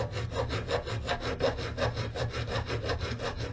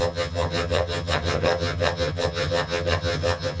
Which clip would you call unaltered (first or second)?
first